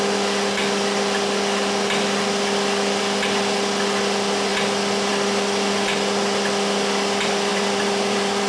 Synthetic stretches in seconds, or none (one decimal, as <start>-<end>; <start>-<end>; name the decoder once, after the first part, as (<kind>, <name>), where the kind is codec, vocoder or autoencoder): 7.5-8.5 (vocoder, BigVGAN v2)